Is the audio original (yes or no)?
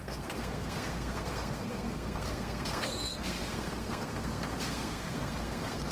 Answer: no